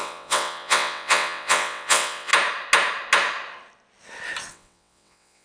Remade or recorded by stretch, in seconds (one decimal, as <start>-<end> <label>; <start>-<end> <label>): 0.0-2.3 remade; 2.3-4.5 recorded; 4.5-5.4 remade